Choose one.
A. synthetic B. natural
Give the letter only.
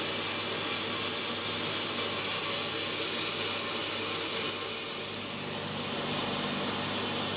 B